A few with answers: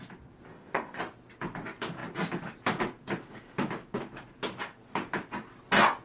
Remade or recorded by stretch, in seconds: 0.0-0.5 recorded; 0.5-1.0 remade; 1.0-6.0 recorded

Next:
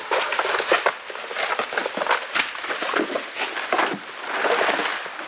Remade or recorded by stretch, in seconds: 0.0-5.3 recorded

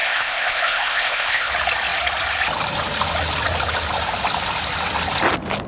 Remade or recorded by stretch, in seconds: 0.0-1.5 remade; 1.5-5.7 recorded